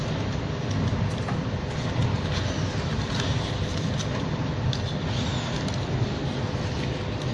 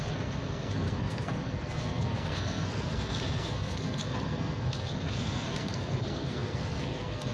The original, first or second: first